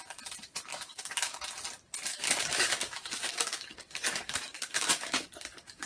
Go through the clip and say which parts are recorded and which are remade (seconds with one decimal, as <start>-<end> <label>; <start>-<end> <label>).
0.0-0.7 recorded; 0.7-1.4 remade; 1.4-2.1 recorded; 2.1-5.9 remade